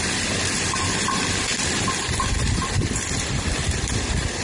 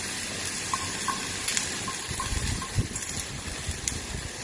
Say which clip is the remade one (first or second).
first